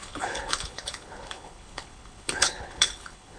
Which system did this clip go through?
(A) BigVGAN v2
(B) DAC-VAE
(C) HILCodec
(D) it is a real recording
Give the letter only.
C